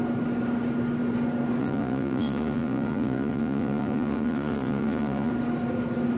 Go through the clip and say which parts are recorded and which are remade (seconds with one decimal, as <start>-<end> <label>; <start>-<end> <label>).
0.0-1.6 recorded; 1.6-5.3 remade; 5.3-6.2 recorded